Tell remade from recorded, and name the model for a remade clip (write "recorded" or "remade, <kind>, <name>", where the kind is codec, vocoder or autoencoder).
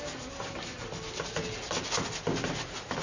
recorded